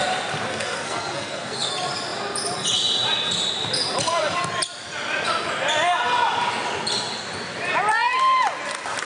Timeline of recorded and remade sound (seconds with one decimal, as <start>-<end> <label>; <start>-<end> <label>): 0.0-0.5 recorded; 0.5-1.7 remade; 1.7-9.0 recorded